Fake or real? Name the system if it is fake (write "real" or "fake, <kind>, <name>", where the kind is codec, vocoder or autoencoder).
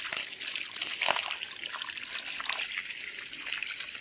real